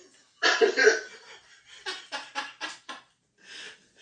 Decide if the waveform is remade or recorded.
recorded